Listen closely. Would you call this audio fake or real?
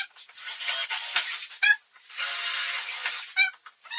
real